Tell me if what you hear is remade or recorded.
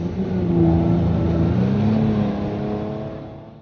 recorded